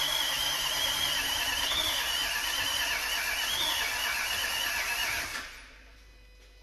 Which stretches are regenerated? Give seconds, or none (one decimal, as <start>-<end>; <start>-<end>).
0.4-1.7; 5.3-6.1